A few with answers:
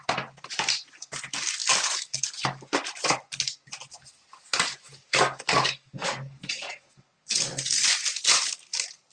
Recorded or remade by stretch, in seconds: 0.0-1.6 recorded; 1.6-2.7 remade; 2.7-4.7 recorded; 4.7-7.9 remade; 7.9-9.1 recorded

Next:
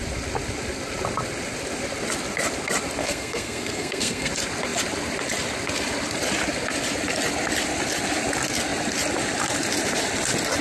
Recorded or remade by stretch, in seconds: 0.0-3.0 recorded; 3.0-4.3 remade; 4.3-10.6 recorded

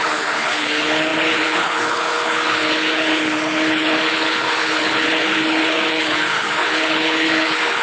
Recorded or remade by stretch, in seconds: 0.0-7.8 remade

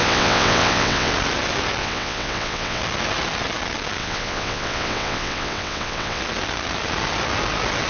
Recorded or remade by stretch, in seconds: 0.0-1.1 remade; 1.1-1.8 recorded; 1.8-2.8 remade; 2.8-4.0 recorded; 4.0-6.2 remade; 6.2-7.9 recorded

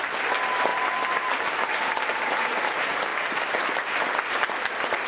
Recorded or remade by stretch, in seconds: 0.0-5.1 recorded

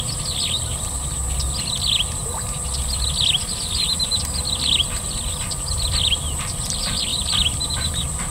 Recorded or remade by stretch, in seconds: 0.0-1.2 remade; 1.2-6.2 recorded; 6.2-8.3 remade

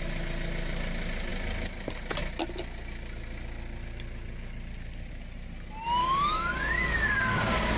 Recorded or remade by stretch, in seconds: 0.0-6.0 recorded; 6.0-7.8 remade